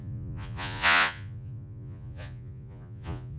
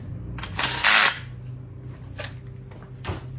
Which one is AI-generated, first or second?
first